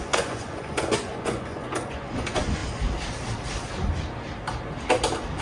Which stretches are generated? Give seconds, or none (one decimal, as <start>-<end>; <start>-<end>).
0.0-2.6